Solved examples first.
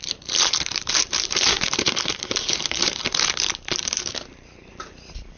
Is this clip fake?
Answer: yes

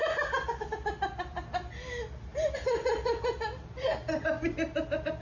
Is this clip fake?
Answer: no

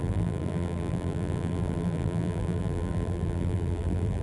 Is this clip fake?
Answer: yes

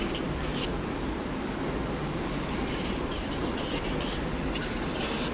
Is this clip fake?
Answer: yes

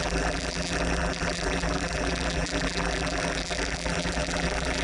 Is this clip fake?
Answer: yes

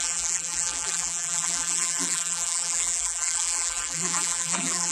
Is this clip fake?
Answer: yes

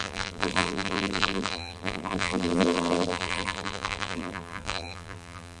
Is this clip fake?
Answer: yes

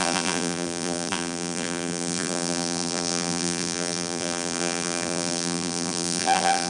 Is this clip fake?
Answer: yes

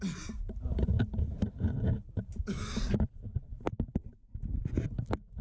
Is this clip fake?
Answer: no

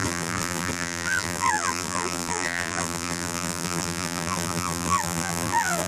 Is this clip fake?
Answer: yes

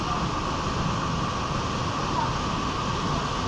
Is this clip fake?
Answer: no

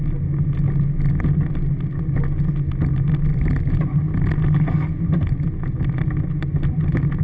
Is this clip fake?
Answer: no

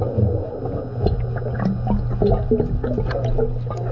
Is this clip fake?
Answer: no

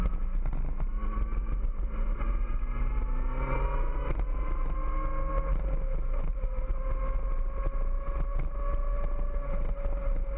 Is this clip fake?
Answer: no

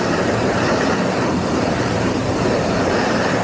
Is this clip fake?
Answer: yes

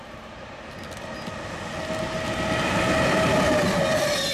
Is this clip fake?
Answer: no